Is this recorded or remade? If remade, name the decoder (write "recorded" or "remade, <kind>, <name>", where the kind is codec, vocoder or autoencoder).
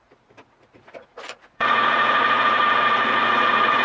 remade, vocoder, Vocos